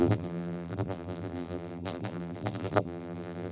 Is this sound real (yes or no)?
no